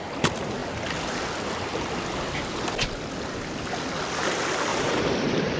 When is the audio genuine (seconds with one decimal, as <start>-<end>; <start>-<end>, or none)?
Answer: 0.0-4.7